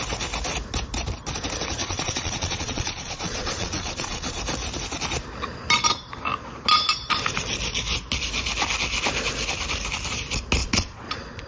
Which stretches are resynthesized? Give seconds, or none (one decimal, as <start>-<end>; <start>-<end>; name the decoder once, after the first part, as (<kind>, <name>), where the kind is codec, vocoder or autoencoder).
1.8-4.4 (vocoder, Vocos); 10.6-11.5